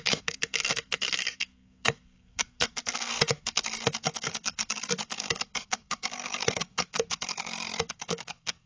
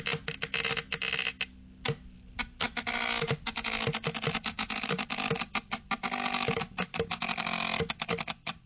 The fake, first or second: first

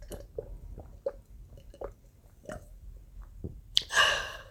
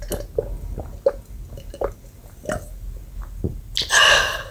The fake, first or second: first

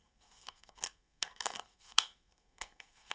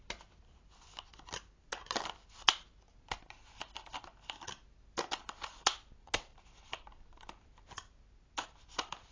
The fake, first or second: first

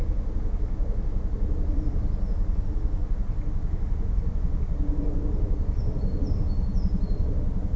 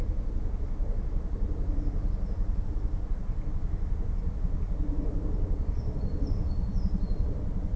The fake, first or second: second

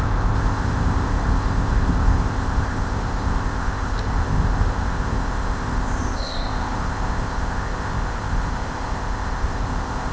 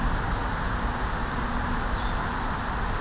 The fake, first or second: first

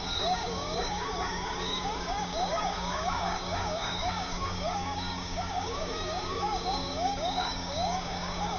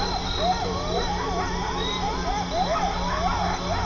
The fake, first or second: first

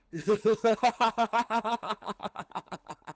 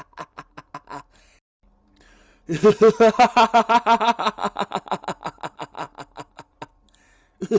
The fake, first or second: first